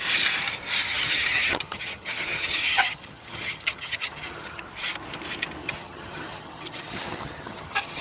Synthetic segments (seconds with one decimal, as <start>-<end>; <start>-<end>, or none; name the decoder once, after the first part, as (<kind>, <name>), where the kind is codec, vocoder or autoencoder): 0.9-4.6 (vocoder, HiFi-GAN); 5.6-8.0